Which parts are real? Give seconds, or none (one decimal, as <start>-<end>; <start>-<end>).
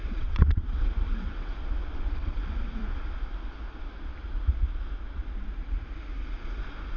1.5-2.2; 2.8-7.0